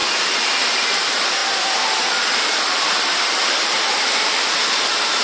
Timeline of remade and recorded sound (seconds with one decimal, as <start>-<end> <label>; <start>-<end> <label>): 0.0-1.4 recorded; 1.4-4.5 remade; 4.5-5.2 recorded